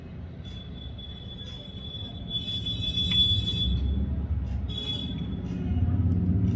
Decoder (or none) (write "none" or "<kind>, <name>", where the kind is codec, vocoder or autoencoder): none